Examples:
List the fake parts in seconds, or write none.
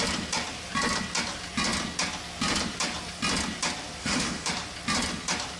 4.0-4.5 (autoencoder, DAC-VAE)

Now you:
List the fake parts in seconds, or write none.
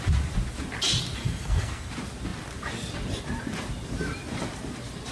1.2-1.9 (codec, SNAC)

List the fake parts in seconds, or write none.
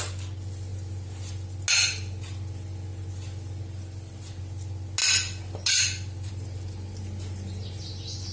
none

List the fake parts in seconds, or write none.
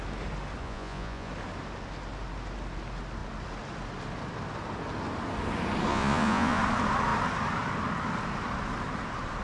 0.6-1.3 (vocoder, Vocos); 5.9-6.6